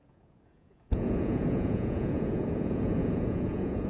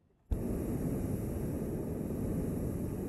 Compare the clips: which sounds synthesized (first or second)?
first